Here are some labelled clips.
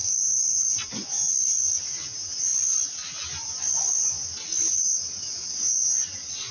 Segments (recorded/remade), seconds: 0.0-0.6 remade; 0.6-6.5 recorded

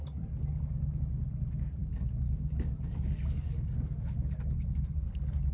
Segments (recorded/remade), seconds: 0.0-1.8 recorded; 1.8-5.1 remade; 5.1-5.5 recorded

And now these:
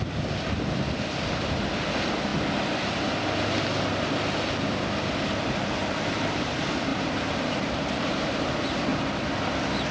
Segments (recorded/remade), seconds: 0.0-5.8 recorded; 5.8-6.5 remade; 6.5-6.9 recorded; 6.9-8.5 remade; 8.5-9.9 recorded